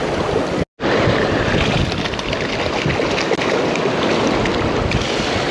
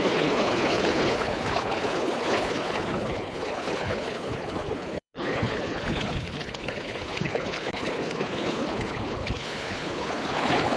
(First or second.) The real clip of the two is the first